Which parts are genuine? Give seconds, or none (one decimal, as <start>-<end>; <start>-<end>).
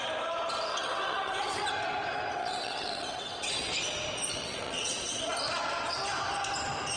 0.0-0.7; 1.7-2.4; 3.7-4.3; 5.3-7.0